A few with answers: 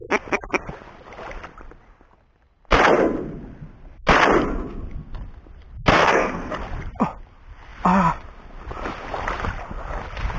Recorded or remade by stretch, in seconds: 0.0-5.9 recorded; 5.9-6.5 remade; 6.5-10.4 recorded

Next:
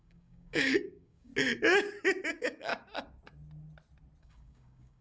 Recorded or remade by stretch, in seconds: 0.0-1.3 remade; 1.3-2.3 recorded; 2.3-2.7 remade; 2.7-4.2 recorded; 4.2-5.0 remade

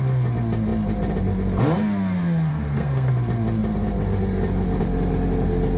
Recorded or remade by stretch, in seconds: 0.0-2.5 recorded; 2.5-3.1 remade; 3.1-5.8 recorded

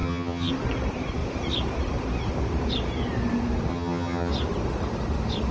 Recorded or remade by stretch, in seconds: 0.0-0.5 remade; 0.5-3.7 recorded; 3.7-4.3 remade; 4.3-5.5 recorded